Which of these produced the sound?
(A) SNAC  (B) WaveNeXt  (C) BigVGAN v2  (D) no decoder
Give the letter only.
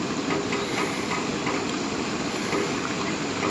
D